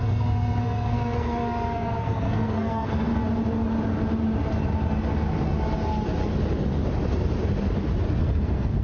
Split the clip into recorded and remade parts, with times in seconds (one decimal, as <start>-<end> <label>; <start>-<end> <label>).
0.0-3.1 remade; 3.1-8.2 recorded; 8.2-8.8 remade